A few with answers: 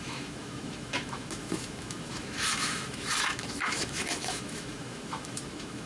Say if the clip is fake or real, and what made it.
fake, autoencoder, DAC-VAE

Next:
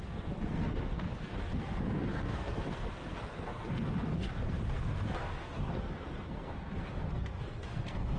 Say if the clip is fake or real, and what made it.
fake, codec, SNAC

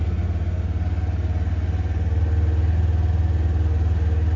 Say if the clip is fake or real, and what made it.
real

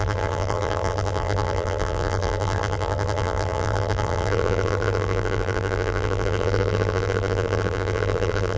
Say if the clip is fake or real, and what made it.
fake, vocoder, BigVGAN v2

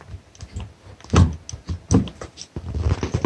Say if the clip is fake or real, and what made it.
real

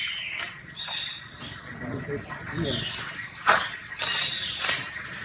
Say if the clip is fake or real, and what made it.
real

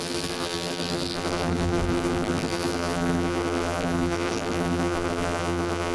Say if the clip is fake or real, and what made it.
fake, vocoder, BigVGAN v2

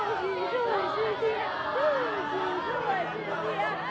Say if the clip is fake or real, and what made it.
real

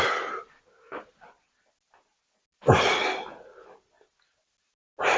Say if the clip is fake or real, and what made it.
real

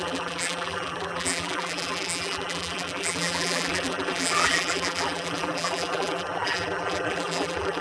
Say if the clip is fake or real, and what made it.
fake, vocoder, BigVGAN v2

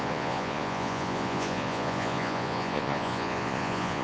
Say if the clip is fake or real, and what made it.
fake, vocoder, Vocos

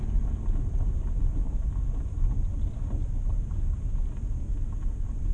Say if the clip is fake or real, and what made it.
real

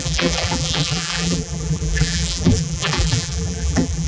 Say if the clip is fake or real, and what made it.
fake, vocoder, BigVGAN v2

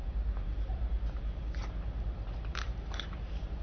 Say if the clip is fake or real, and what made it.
fake, vocoder, BigVGAN v2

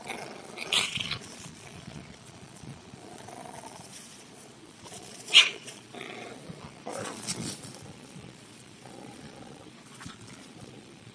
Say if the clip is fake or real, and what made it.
fake, vocoder, Vocos